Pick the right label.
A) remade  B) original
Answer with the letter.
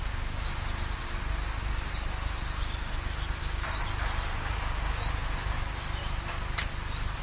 B